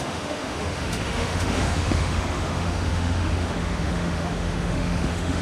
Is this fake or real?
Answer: fake